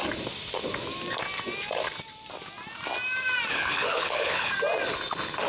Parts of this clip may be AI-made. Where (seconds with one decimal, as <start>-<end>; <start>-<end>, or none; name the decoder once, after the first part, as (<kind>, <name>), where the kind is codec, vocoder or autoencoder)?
3.5-4.5 (codec, HILCodec)